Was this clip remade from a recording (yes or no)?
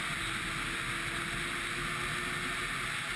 no